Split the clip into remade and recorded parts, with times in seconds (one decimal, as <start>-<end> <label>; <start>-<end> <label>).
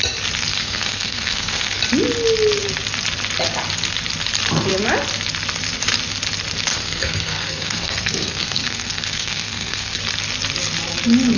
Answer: 0.0-0.5 recorded; 0.5-1.8 remade; 1.8-6.7 recorded; 6.7-10.0 remade; 10.0-11.4 recorded